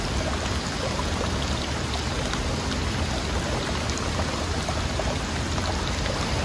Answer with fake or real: real